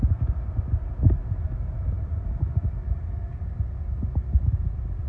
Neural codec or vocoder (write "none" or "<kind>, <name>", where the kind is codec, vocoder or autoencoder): none